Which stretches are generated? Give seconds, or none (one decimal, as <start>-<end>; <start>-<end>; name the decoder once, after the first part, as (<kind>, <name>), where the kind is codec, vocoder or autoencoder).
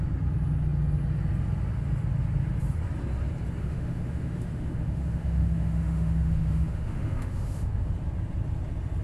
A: 3.6-7.9 (autoencoder, DAC-VAE)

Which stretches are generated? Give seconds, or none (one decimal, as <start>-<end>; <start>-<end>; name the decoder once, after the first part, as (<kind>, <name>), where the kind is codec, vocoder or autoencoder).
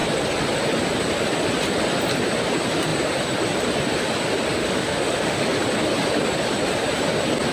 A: 4.6-5.4 (autoencoder, DAC-VAE)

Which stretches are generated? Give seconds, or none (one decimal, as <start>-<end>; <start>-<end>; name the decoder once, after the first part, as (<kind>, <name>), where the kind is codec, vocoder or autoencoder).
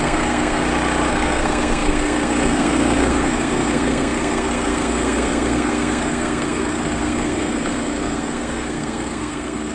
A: 0.0-0.6 (codec, SNAC); 1.1-9.7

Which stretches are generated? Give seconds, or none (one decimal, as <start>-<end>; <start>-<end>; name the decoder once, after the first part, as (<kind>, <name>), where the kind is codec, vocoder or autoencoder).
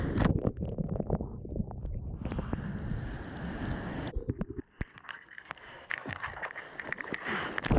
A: 5.1-6.2 (codec, SNAC)